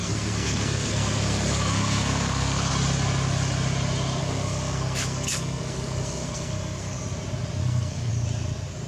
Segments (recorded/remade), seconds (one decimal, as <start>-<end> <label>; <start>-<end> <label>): 0.0-2.7 remade; 2.7-4.2 recorded; 4.2-7.0 remade; 7.0-7.6 recorded; 7.6-8.1 remade; 8.1-8.9 recorded